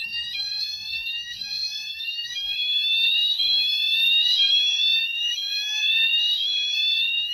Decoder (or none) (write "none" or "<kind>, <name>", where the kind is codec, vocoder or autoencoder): codec, SNAC